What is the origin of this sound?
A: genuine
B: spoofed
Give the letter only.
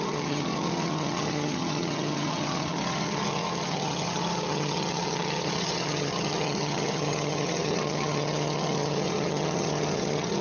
B